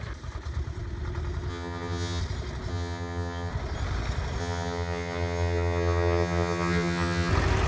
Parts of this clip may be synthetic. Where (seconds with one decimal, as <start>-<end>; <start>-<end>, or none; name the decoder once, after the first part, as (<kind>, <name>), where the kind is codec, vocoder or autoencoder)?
1.5-2.2 (vocoder, HiFi-GAN); 2.7-3.5; 4.4-7.3